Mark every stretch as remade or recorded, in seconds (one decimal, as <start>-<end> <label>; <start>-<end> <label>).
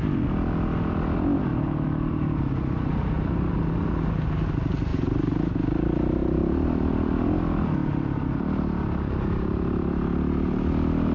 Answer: 0.0-1.5 recorded; 1.5-2.4 remade; 2.4-4.9 recorded; 4.9-5.5 remade; 5.5-7.8 recorded; 7.8-8.6 remade; 8.6-11.1 recorded